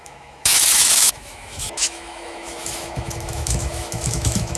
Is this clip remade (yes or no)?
yes